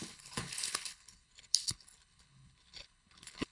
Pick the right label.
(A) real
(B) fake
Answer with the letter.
B